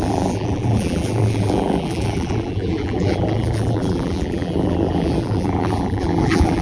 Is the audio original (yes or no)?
no